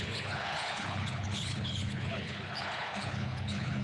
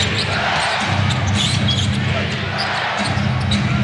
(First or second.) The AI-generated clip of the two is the first